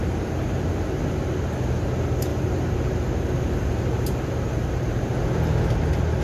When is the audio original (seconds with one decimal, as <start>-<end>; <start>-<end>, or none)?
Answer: 0.0-2.3; 5.0-6.2